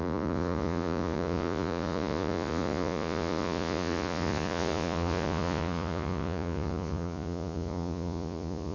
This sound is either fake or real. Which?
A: fake